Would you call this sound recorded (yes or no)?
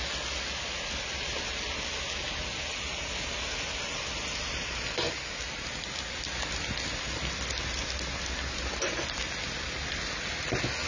yes